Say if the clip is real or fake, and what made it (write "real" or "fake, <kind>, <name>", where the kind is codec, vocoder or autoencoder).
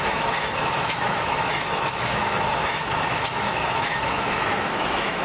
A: fake, autoencoder, DAC-VAE